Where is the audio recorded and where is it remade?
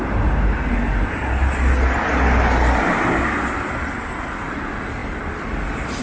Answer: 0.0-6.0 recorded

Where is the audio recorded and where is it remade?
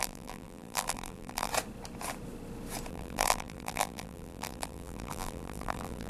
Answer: 0.0-1.5 remade; 1.5-2.9 recorded; 2.9-6.1 remade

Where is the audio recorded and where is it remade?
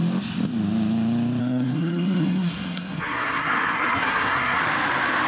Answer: 0.0-1.4 recorded; 1.4-4.6 remade; 4.6-5.3 recorded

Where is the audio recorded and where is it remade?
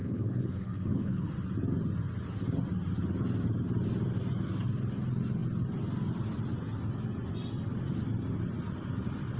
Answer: 0.0-1.3 remade; 1.3-9.4 recorded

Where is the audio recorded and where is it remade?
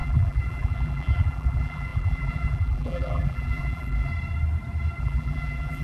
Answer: 0.0-4.1 remade; 4.1-5.0 recorded; 5.0-5.8 remade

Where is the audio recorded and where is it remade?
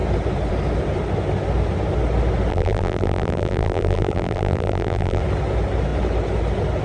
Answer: 0.0-2.5 recorded; 2.5-5.2 remade; 5.2-6.8 recorded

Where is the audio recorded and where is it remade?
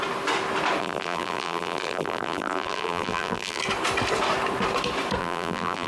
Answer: 0.0-0.8 recorded; 0.8-3.6 remade; 3.6-5.2 recorded; 5.2-5.9 remade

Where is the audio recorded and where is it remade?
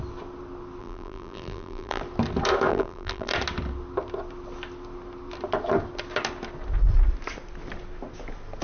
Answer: 0.0-0.8 recorded; 0.8-2.0 remade; 2.0-2.7 recorded; 2.7-3.3 remade; 3.3-8.6 recorded